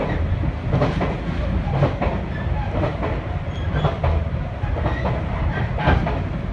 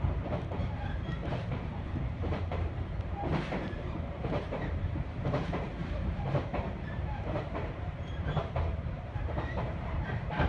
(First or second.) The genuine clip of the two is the first